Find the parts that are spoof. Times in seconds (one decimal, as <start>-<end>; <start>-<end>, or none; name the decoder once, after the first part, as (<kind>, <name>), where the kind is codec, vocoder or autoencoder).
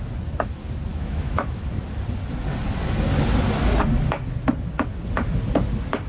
0.9-1.8 (autoencoder, DAC-VAE)